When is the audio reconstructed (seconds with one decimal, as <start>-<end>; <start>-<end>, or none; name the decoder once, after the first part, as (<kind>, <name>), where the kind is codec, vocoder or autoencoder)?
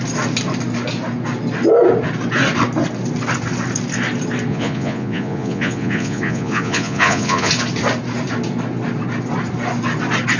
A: 4.5-7.5 (vocoder, Vocos)